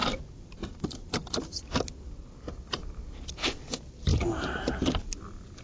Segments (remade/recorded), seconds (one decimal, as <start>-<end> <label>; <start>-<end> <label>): 0.0-5.6 recorded